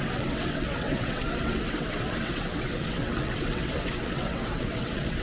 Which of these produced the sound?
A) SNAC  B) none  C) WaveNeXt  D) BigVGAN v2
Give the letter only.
C